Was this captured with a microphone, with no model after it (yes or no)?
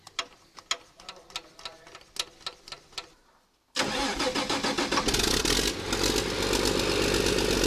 yes